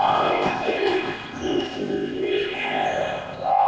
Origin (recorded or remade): remade